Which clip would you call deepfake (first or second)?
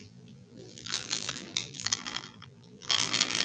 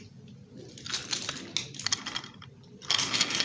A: first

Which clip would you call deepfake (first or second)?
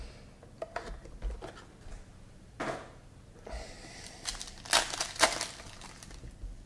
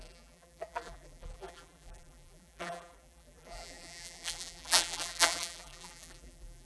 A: second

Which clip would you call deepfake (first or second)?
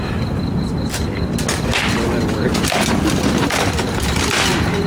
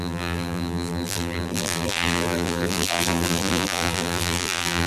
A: second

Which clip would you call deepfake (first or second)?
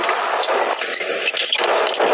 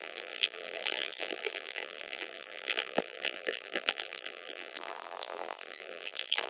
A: second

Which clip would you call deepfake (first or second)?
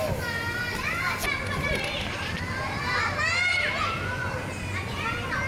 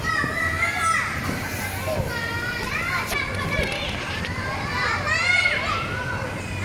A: second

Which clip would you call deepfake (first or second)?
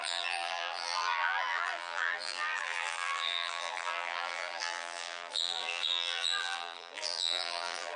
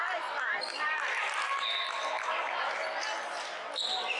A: first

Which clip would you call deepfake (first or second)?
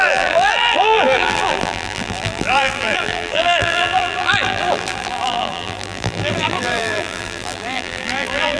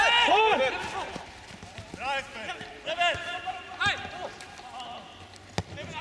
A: first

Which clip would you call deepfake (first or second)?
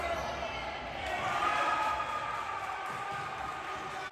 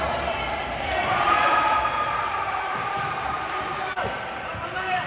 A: second